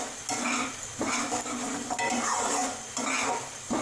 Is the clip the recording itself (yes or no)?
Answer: yes